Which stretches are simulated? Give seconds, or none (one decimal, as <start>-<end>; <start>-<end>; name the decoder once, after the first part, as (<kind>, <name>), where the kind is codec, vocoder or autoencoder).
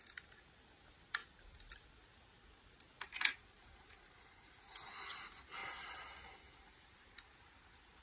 none